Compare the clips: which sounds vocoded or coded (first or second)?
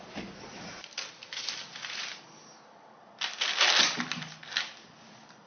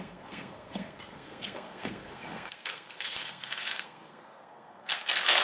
second